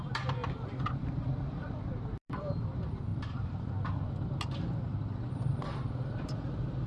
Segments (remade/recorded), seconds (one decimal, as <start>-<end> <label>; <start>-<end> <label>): 0.0-3.1 remade; 3.1-5.3 recorded; 5.3-6.9 remade